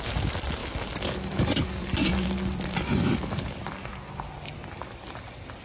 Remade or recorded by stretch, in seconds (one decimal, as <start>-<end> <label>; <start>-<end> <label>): 0.0-3.9 remade; 3.9-5.0 recorded; 5.0-5.6 remade